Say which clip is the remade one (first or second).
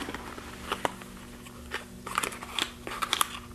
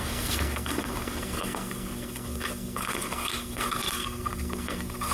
second